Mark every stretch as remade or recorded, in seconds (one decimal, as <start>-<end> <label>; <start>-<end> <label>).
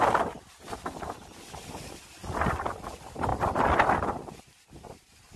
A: 0.0-5.4 recorded